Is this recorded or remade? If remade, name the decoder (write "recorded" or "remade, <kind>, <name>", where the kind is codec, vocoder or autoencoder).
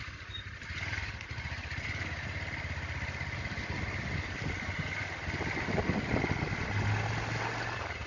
recorded